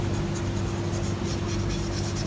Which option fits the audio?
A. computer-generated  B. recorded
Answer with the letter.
B